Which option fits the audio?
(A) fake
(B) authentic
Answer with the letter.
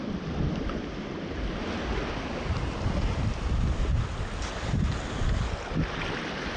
B